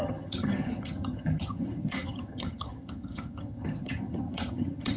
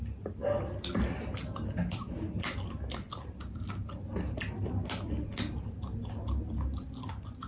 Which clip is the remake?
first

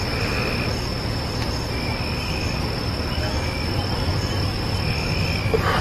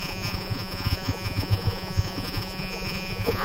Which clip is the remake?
second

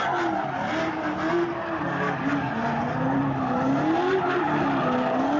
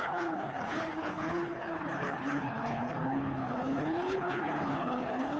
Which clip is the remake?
second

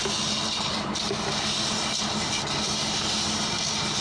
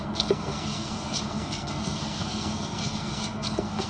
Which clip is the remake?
second